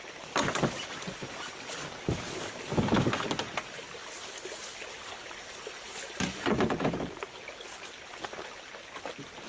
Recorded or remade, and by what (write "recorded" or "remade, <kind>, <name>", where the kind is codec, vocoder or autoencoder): recorded